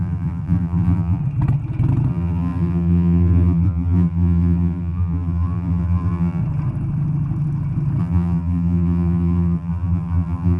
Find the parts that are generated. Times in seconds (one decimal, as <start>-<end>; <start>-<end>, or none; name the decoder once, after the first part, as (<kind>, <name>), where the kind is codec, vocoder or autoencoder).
0.0-1.2 (vocoder, BigVGAN v2); 2.1-6.4; 8.0-10.6